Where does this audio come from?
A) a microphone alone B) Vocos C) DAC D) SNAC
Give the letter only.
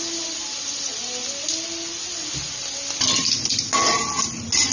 A